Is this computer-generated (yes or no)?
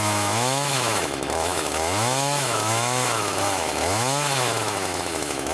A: yes